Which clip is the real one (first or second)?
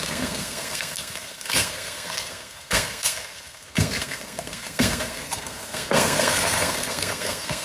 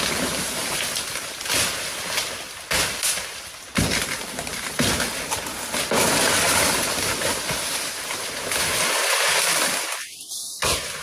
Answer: second